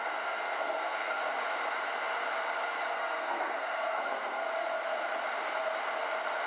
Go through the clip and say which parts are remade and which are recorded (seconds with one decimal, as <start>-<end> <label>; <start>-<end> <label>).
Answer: 0.0-1.2 remade; 1.2-2.9 recorded; 2.9-4.4 remade; 4.4-6.5 recorded